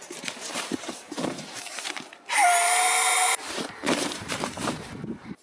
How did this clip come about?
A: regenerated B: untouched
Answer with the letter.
A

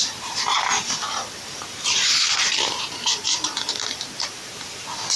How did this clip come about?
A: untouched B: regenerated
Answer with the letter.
B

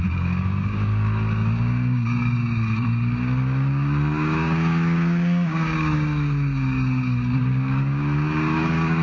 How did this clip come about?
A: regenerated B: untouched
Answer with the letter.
A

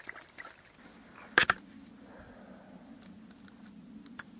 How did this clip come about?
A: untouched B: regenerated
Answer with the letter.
A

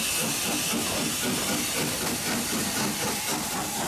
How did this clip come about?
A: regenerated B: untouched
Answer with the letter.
B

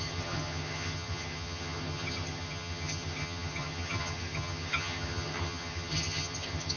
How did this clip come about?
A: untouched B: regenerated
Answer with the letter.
B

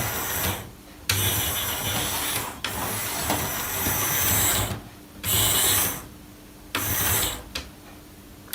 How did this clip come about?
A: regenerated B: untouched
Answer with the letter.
B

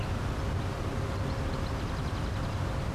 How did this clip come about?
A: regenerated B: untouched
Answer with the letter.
B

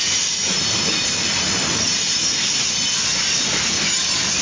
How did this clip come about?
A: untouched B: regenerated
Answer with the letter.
A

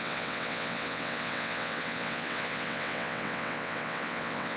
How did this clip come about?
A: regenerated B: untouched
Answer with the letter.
A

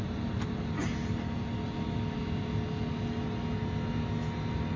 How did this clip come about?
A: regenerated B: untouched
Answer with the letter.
B